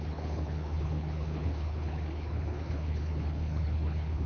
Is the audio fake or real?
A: fake